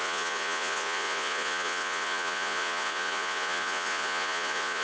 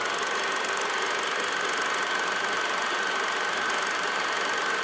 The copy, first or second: first